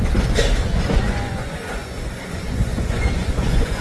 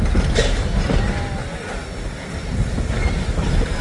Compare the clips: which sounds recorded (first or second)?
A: second